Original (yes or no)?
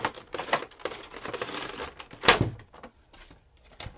no